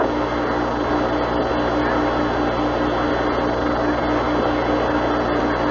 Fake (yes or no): no